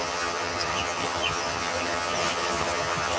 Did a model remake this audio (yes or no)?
yes